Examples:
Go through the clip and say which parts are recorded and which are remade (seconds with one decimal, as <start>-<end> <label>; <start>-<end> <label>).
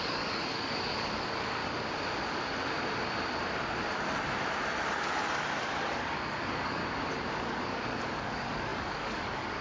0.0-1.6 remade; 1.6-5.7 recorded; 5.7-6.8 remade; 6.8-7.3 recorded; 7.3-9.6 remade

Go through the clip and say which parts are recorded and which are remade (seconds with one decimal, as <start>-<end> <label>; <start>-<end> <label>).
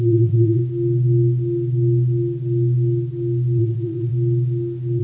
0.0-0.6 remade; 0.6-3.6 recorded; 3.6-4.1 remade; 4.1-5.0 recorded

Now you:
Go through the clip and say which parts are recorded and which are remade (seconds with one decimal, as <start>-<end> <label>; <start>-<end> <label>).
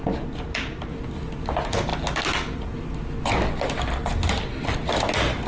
0.0-5.5 recorded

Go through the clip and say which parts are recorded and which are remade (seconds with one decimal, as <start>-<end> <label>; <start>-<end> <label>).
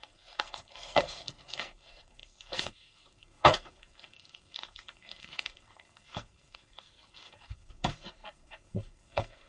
0.0-9.5 remade